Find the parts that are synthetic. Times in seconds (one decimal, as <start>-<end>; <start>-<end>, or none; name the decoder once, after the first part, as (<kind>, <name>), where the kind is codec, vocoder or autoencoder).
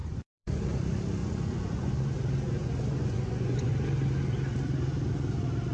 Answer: 0.0-0.6 (vocoder, Vocos); 1.2-2.1; 2.6-3.7